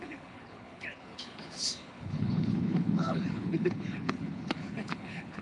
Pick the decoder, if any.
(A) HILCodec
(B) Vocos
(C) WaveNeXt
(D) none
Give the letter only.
A